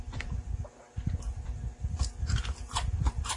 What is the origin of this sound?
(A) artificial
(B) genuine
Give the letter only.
A